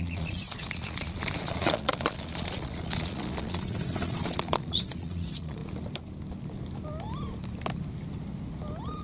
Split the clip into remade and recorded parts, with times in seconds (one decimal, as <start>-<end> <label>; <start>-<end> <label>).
0.0-5.6 remade; 5.6-9.0 recorded